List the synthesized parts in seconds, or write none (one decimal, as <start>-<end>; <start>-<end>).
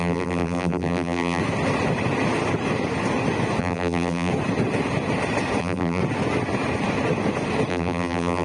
0.0-1.4; 3.6-4.3; 5.6-6.0; 7.7-8.4